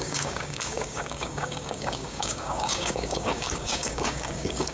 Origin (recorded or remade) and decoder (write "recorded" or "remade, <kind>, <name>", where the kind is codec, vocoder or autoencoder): remade, codec, DAC